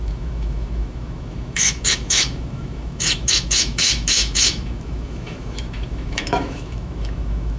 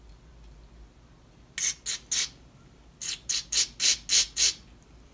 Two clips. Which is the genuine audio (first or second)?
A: second